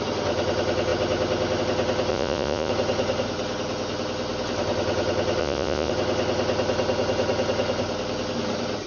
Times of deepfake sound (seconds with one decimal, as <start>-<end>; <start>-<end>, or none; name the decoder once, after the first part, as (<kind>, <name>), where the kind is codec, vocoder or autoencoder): 2.1-2.7 (vocoder, Vocos); 5.4-5.9